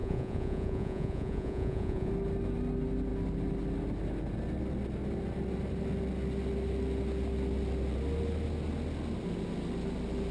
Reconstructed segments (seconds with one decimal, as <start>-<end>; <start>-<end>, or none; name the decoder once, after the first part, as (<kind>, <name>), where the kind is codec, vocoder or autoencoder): 0.0-2.1 (vocoder, Vocos)